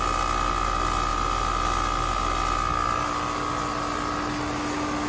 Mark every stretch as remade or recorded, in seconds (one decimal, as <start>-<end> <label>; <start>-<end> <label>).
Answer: 0.0-5.1 recorded